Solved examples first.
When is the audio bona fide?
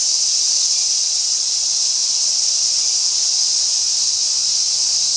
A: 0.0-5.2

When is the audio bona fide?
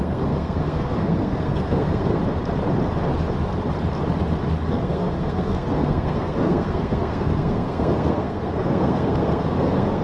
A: 2.2-4.7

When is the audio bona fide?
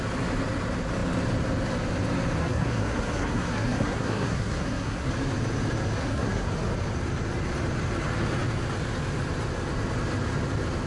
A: 0.0-2.4; 5.1-6.0; 6.5-10.9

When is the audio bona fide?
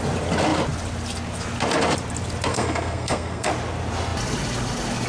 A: 0.0-2.5; 3.5-5.1